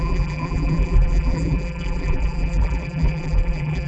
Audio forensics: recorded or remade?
remade